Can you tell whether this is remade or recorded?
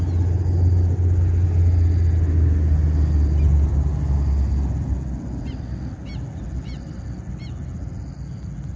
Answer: recorded